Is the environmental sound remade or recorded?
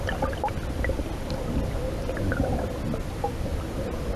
recorded